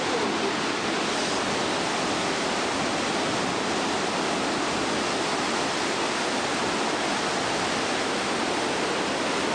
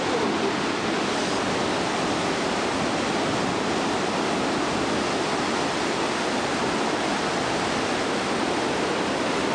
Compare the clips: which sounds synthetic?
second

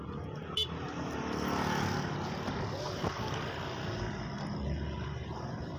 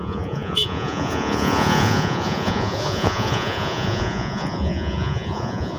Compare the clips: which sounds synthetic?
second